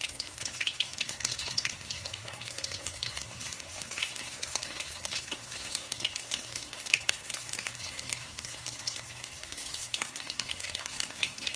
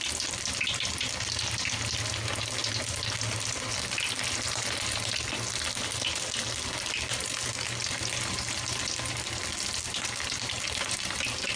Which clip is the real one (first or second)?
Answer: second